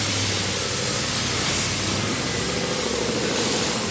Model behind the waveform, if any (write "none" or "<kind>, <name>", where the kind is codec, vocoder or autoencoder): none